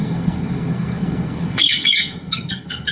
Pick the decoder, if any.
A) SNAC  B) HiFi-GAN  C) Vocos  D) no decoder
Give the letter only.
A